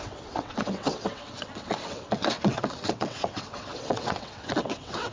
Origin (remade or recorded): remade